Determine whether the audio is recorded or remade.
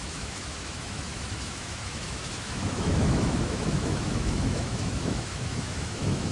remade